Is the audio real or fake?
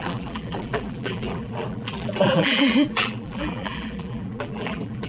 fake